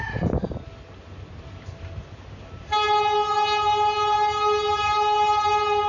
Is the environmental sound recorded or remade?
recorded